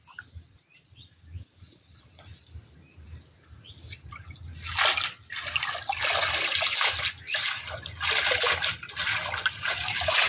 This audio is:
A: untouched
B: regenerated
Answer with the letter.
A